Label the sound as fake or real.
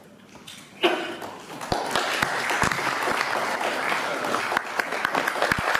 real